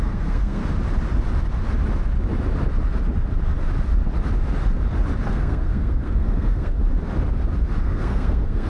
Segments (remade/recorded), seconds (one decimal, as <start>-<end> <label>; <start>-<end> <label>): 0.0-0.6 remade; 0.6-5.3 recorded; 5.3-6.8 remade; 6.8-7.8 recorded; 7.8-8.7 remade